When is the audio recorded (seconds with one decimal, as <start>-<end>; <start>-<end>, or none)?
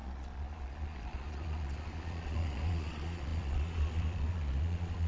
none